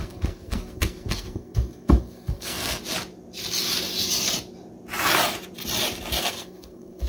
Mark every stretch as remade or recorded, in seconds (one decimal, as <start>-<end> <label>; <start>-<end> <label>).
0.0-2.8 remade; 2.8-6.2 recorded; 6.2-7.1 remade